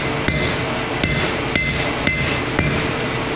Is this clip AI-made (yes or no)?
no